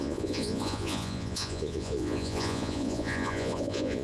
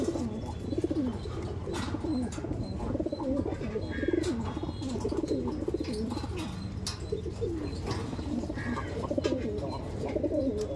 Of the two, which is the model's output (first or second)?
first